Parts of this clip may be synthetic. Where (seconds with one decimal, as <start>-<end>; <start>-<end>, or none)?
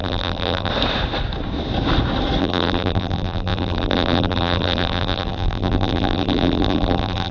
0.0-0.7; 2.4-7.3